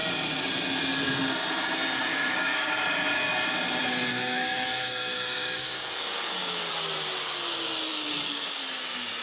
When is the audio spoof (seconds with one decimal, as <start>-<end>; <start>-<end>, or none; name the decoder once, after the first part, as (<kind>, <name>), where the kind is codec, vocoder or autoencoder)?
2.1-2.8 (codec, DAC); 4.1-6.7; 7.9-8.6